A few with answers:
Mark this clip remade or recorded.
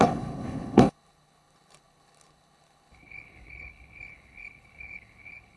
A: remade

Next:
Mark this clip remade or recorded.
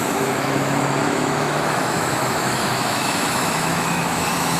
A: remade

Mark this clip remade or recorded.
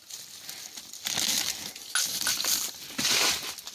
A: recorded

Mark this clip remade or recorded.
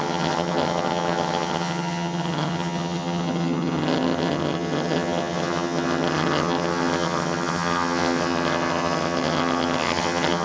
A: remade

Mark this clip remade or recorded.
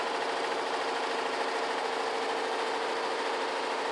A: recorded